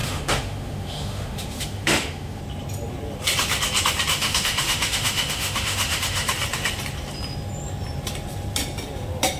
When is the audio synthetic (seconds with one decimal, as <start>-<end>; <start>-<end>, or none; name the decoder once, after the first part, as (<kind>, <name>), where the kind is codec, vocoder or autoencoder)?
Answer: 0.0-2.4 (autoencoder, DAC-VAE); 4.1-6.3